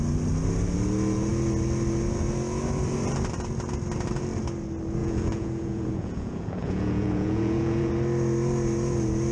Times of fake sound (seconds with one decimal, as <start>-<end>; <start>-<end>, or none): 5.0-7.9